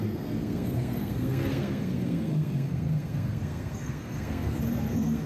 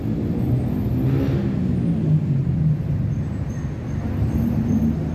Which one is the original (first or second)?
second